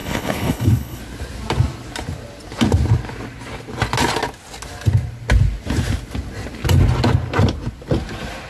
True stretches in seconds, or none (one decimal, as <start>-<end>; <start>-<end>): 1.0-8.5